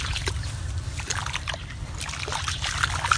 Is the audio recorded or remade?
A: recorded